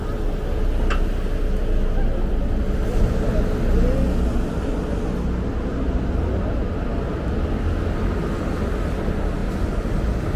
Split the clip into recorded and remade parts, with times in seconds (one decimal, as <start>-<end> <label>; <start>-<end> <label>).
0.0-10.4 recorded